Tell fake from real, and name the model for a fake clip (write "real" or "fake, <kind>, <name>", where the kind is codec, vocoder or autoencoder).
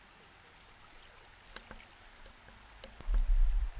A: real